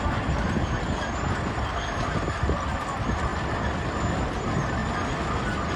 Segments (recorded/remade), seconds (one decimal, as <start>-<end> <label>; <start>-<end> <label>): 0.0-5.8 recorded